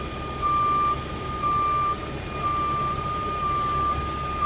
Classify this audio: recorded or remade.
recorded